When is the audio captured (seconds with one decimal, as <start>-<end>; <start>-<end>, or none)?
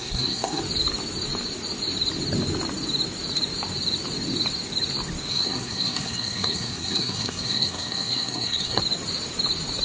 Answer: 0.6-5.3; 8.8-9.8